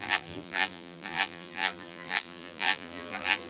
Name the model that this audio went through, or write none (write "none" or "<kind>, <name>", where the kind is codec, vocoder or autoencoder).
vocoder, BigVGAN v2